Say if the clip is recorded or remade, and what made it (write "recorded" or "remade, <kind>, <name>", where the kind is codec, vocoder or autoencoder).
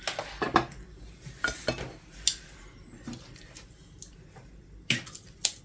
recorded